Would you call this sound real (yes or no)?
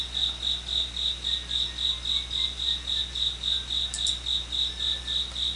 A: yes